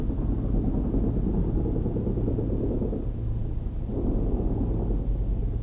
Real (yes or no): yes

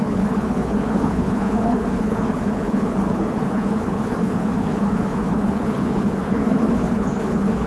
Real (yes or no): no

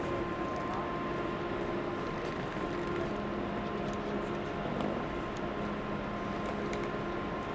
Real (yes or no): yes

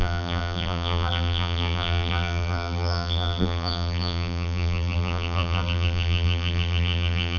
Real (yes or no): no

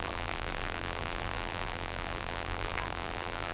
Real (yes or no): no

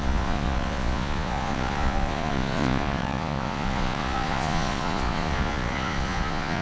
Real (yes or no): no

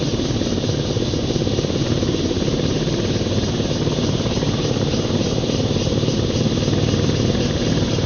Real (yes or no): no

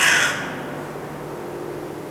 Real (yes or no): yes